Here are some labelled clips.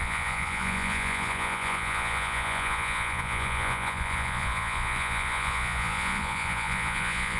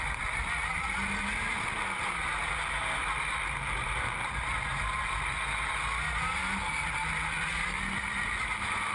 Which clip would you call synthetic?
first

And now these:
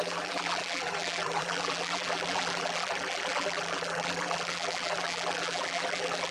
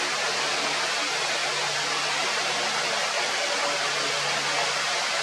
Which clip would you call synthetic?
first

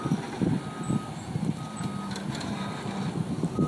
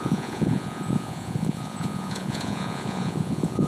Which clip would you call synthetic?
second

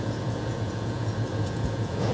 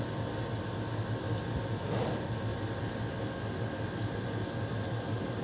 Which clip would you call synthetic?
first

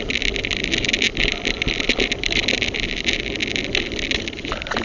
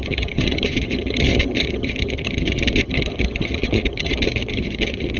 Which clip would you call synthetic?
second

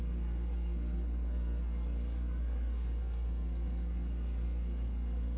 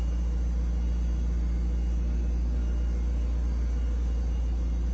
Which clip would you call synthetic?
first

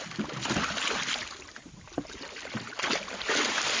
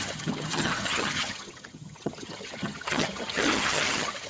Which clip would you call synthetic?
second